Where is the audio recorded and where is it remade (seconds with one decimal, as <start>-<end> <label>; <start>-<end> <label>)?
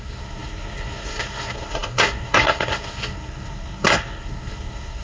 0.0-5.0 remade